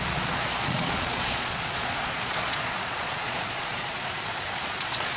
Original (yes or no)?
no